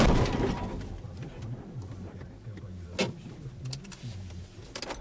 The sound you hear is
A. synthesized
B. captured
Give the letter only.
B